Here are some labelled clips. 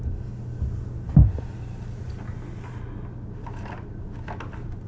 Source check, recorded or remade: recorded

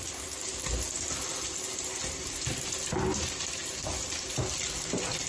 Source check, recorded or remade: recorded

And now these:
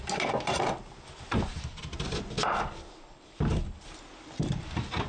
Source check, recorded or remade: recorded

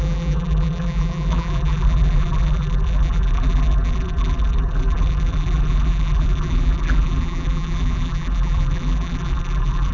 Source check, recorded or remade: remade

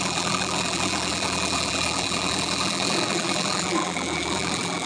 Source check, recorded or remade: remade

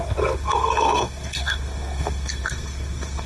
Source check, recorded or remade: remade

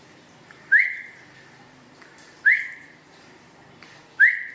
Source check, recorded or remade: remade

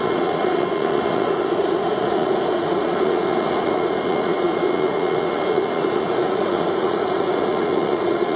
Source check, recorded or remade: remade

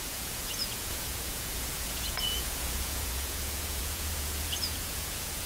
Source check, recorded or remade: remade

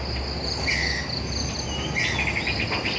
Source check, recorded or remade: recorded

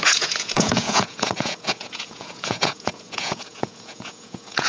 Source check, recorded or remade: remade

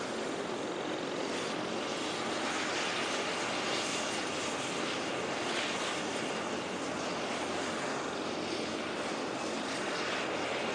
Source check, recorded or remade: recorded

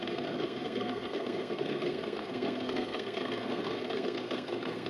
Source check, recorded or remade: remade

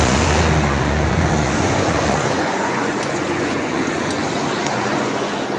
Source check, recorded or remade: remade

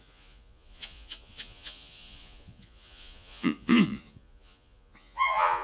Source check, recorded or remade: remade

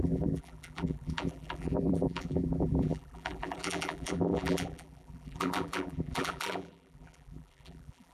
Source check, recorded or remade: remade